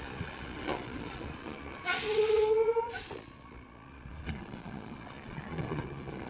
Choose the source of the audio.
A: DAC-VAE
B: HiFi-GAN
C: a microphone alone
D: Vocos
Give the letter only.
D